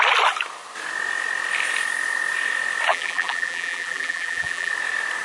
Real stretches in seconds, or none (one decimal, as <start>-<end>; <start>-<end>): 0.0-2.9; 4.7-5.2